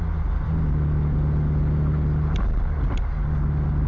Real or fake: real